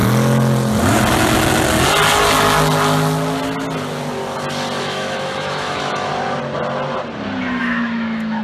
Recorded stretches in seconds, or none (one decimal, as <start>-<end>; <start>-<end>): 0.0-4.8; 6.1-7.6